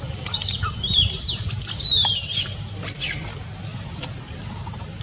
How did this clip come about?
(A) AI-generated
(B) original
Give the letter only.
A